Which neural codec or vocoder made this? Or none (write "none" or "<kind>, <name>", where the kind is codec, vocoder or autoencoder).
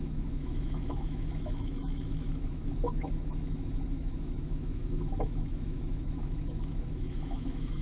autoencoder, DAC-VAE